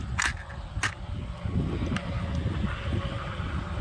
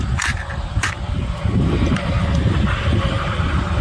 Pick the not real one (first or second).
second